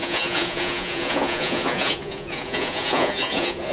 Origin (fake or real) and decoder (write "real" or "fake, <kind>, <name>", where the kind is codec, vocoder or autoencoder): fake, vocoder, Vocos